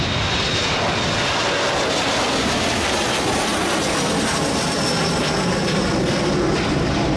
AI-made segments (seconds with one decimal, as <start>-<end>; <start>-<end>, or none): none